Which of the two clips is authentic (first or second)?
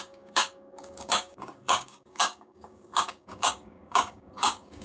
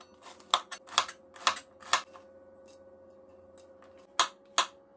second